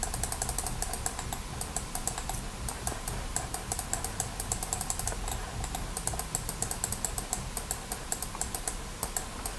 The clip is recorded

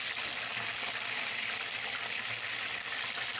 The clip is recorded